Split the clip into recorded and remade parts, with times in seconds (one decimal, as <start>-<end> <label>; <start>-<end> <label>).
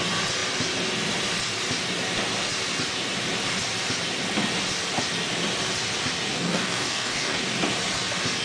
0.0-6.3 recorded; 6.3-7.4 remade; 7.4-8.4 recorded